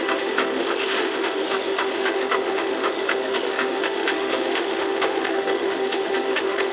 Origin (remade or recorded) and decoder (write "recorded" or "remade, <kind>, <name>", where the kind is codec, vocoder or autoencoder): remade, autoencoder, DAC-VAE